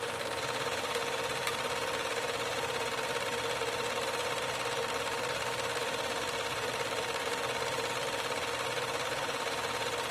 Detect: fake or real fake